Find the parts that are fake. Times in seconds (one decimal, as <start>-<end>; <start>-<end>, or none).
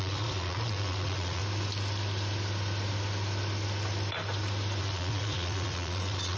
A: 0.0-1.4; 4.8-6.4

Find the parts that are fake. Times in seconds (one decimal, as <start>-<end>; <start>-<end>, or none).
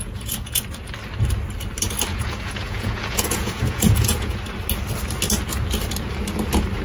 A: 0.0-0.6; 2.1-4.4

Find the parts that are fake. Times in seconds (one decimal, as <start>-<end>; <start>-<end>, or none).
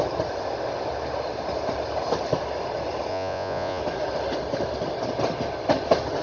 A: 3.1-3.8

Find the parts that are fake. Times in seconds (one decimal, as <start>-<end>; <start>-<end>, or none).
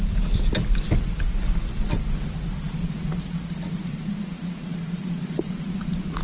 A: 2.8-6.2